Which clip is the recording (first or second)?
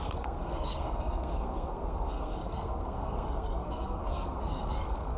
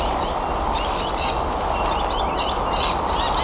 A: second